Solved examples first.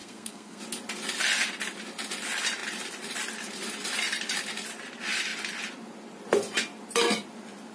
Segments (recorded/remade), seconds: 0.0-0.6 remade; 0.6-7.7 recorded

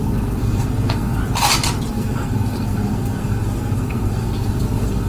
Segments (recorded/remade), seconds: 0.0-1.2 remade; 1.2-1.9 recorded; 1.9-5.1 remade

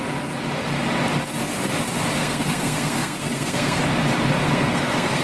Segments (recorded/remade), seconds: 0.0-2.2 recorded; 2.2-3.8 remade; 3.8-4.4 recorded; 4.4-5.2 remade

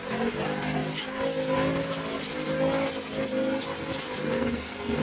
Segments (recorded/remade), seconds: 0.0-4.2 recorded; 4.2-5.0 remade